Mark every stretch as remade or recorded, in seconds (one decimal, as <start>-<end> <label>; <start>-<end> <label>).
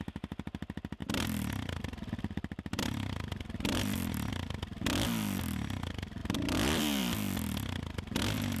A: 0.0-1.0 recorded; 1.0-4.3 remade; 4.3-6.2 recorded; 6.2-7.0 remade; 7.0-8.6 recorded